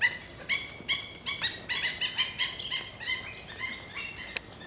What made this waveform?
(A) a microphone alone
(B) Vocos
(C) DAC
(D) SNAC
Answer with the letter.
A